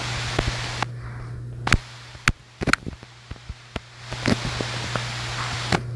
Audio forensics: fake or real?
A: real